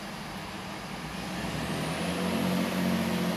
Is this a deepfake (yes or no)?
no